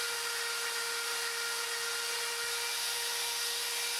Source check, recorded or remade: recorded